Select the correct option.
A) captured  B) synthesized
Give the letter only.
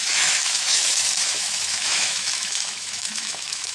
B